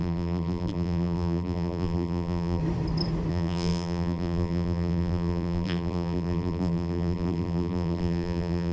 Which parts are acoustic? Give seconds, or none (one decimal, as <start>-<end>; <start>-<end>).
2.6-3.3